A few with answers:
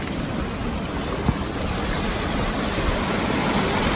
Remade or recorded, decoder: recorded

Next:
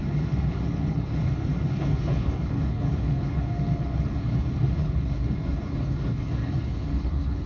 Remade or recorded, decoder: remade, codec, HILCodec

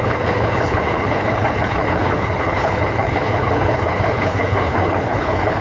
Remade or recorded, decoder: remade, codec, HILCodec